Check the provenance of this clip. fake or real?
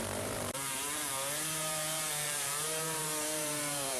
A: fake